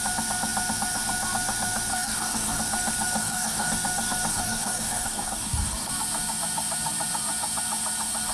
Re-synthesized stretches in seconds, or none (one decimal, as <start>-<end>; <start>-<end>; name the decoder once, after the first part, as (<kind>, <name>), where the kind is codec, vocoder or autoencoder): 1.9-2.6 (codec, DAC); 3.2-3.7; 4.3-5.9